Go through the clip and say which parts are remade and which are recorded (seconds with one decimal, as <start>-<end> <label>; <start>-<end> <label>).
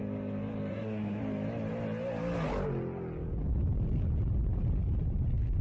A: 0.0-0.7 recorded; 0.7-1.2 remade; 1.2-5.6 recorded